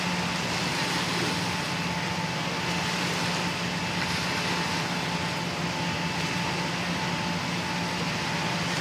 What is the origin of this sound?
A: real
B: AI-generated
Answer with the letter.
A